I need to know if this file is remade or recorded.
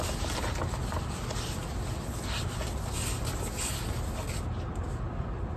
recorded